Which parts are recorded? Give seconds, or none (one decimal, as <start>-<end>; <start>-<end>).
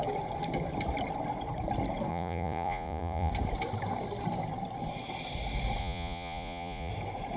0.0-2.1; 3.3-5.8; 6.9-7.4